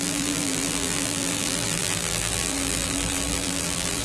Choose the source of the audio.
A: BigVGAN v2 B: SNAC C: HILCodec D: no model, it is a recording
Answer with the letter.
A